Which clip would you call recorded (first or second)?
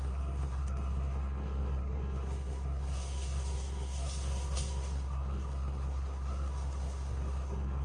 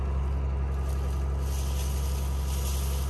second